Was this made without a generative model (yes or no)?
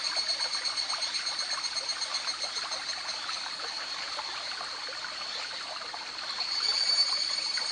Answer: no